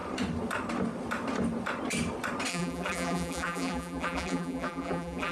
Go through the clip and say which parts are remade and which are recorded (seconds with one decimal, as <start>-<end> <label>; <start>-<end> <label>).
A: 0.0-2.5 recorded; 2.5-5.3 remade